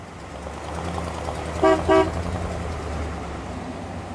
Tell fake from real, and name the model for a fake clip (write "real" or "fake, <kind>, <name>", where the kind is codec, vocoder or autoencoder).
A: real